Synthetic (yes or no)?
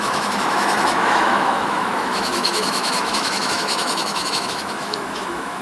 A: yes